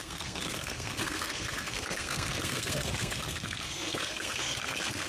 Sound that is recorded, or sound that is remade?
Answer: remade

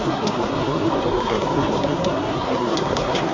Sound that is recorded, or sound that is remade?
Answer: remade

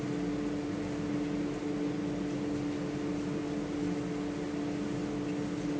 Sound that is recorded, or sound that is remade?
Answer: recorded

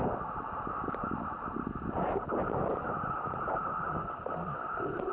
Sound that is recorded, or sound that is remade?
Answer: recorded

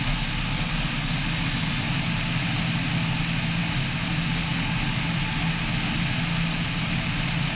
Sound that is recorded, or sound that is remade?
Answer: recorded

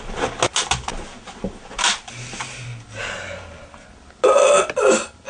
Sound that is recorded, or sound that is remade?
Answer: recorded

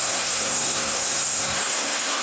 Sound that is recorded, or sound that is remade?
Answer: remade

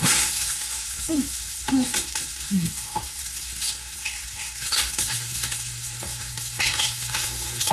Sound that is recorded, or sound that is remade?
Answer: remade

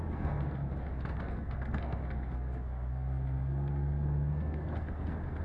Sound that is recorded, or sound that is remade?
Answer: remade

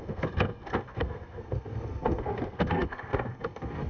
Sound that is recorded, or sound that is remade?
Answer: remade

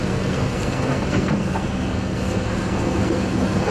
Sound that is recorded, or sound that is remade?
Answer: remade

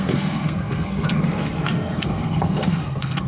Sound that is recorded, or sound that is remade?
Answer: remade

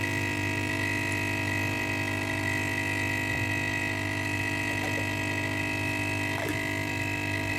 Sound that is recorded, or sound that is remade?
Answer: recorded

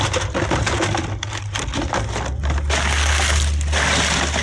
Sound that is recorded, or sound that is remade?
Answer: recorded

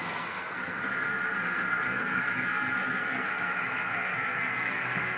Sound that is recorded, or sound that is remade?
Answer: remade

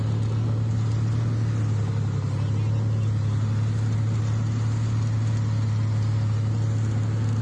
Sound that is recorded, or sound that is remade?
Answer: recorded